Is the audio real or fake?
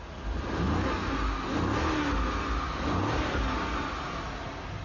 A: real